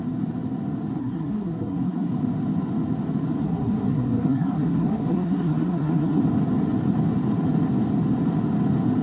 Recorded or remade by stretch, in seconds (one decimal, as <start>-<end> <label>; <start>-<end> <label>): 0.0-1.0 recorded; 1.0-2.1 remade; 2.1-3.4 recorded; 3.4-6.2 remade; 6.2-9.0 recorded